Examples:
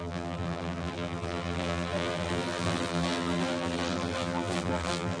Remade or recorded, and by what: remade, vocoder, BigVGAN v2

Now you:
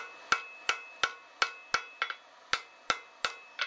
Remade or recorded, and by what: recorded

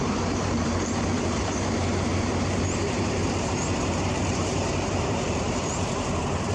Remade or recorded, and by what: remade, vocoder, BigVGAN v2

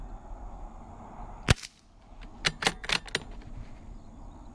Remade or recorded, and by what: recorded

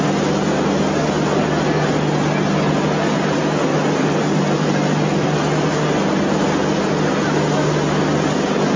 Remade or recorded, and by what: recorded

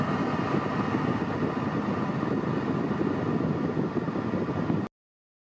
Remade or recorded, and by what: recorded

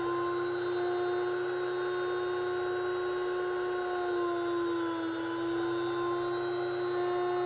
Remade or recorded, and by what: recorded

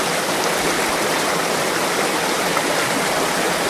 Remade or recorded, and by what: recorded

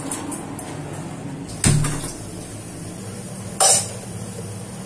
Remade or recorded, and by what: recorded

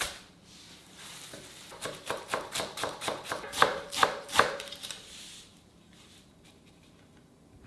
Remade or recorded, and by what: remade, vocoder, BigVGAN v2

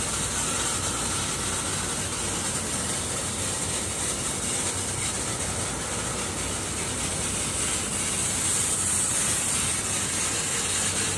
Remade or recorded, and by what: recorded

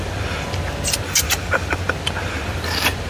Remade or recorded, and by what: remade, vocoder, BigVGAN v2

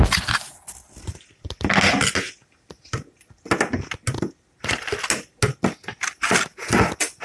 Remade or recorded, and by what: recorded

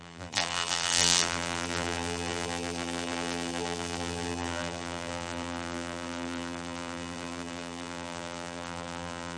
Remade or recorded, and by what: remade, vocoder, BigVGAN v2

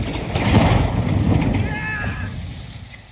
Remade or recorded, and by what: recorded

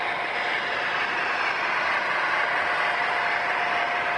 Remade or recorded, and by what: remade, vocoder, BigVGAN v2